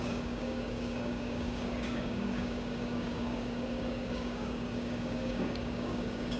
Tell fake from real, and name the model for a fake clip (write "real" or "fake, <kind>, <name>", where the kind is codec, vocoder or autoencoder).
fake, codec, DAC